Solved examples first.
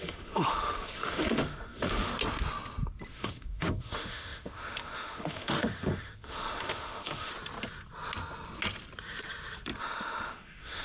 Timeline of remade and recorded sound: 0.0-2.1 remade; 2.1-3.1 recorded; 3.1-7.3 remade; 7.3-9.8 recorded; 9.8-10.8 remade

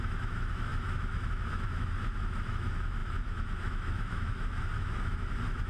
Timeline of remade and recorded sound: 0.0-5.7 remade

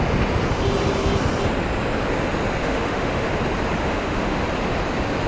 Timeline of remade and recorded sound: 0.0-2.6 recorded; 2.6-3.3 remade; 3.3-3.8 recorded; 3.8-4.4 remade; 4.4-5.3 recorded

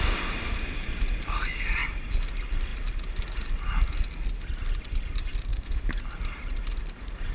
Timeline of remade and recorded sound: 0.0-5.5 recorded; 5.5-6.0 remade; 6.0-7.3 recorded

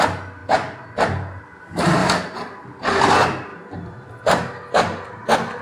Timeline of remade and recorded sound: 0.0-5.6 recorded

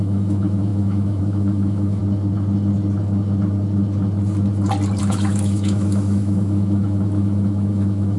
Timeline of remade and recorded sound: 0.0-2.0 remade; 2.0-5.0 recorded; 5.0-8.2 remade